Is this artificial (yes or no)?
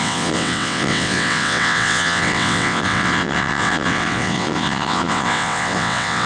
yes